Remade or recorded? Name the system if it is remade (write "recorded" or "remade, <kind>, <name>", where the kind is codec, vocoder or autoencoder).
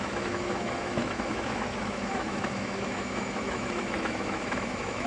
remade, autoencoder, DAC-VAE